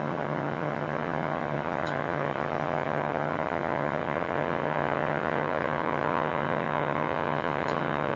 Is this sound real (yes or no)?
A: no